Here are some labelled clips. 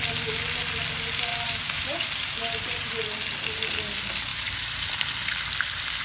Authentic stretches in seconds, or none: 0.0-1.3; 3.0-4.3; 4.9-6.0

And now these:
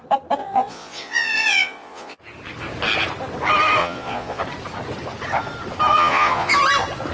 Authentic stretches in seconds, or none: 0.0-0.4; 2.2-3.8; 4.4-5.9; 6.5-7.1

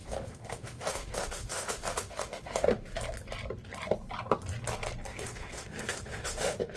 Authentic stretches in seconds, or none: 3.0-5.1

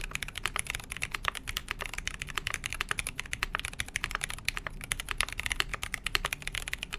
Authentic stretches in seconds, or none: 0.0-7.0